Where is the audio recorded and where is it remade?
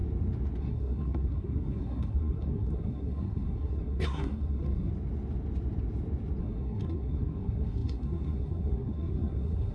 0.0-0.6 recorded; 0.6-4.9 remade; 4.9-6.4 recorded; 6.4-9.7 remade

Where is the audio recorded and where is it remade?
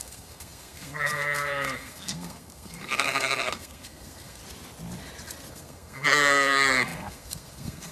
0.0-4.4 remade; 4.4-5.5 recorded; 5.5-7.9 remade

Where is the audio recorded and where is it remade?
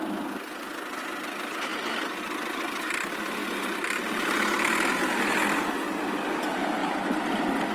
0.0-6.8 recorded; 6.8-7.3 remade; 7.3-7.7 recorded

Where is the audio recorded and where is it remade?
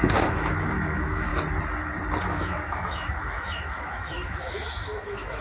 0.0-1.3 remade; 1.3-2.3 recorded; 2.3-5.4 remade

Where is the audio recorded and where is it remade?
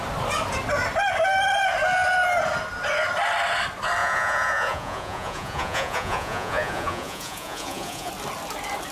0.0-4.0 recorded; 4.0-8.1 remade; 8.1-8.9 recorded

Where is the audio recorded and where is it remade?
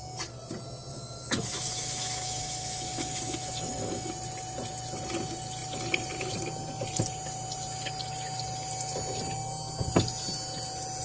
0.0-0.9 recorded; 0.9-4.1 remade; 4.1-11.0 recorded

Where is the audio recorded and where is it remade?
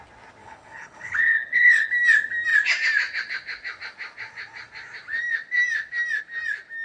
0.0-0.4 recorded; 0.4-1.9 remade; 1.9-6.8 recorded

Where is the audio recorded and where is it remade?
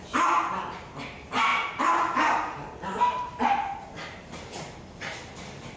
0.0-5.8 remade